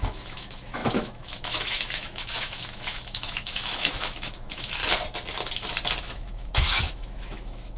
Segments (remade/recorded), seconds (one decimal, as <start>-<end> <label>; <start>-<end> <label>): 0.0-4.8 remade; 4.8-6.0 recorded; 6.0-7.8 remade